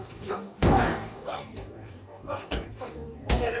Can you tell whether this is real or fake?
fake